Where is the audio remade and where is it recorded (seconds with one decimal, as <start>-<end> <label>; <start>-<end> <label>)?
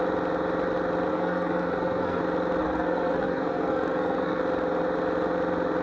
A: 0.0-1.1 recorded; 1.1-2.2 remade; 2.2-2.6 recorded; 2.6-4.4 remade; 4.4-5.8 recorded